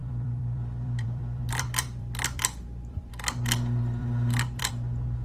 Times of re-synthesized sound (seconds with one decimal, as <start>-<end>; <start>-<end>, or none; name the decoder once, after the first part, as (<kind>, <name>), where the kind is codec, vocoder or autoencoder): 0.0-3.1 (vocoder, BigVGAN v2); 4.0-4.7